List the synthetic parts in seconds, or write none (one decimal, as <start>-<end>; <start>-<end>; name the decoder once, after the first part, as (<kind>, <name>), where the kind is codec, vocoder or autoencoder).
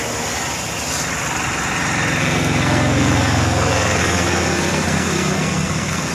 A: 2.2-6.1 (codec, SNAC)